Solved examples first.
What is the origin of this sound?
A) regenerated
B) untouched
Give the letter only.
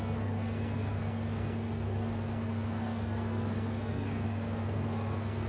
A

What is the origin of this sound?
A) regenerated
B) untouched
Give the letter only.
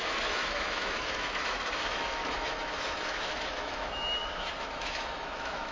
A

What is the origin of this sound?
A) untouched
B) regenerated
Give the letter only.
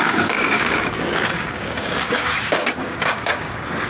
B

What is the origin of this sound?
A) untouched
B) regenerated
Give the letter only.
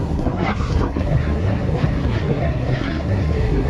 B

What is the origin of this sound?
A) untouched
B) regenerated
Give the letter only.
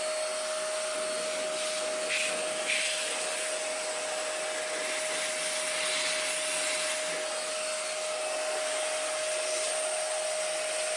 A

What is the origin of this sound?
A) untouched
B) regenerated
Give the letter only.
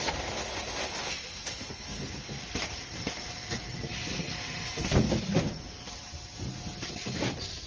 A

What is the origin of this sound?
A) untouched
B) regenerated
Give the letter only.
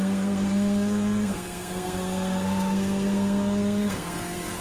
B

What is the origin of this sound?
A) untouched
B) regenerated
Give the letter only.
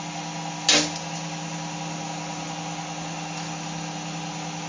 A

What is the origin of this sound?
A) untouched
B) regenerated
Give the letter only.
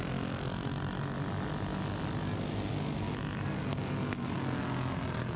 A